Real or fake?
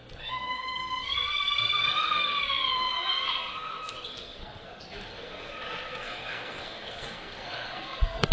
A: fake